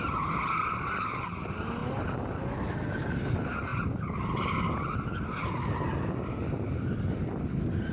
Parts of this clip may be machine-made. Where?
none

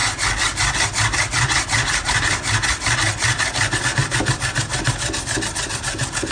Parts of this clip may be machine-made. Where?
none

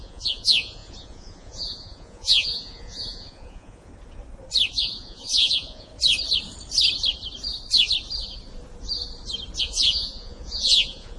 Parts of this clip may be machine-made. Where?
0.0-3.9 (vocoder, Vocos); 4.7-5.9; 9.6-11.2

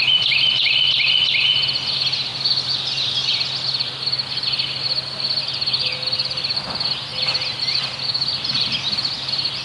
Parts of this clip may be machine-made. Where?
none

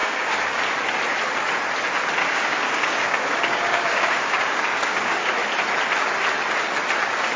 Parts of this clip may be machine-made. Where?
0.0-0.6 (codec, DAC); 2.2-5.3